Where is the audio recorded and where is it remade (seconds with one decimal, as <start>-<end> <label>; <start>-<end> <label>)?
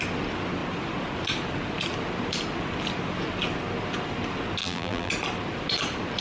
0.0-4.6 recorded; 4.6-5.1 remade; 5.1-6.2 recorded